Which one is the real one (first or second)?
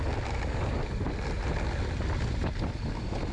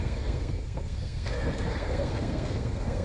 first